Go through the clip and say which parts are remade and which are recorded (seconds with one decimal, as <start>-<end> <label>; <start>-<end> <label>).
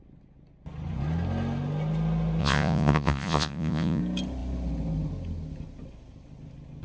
0.0-2.4 recorded; 2.4-4.0 remade; 4.0-6.8 recorded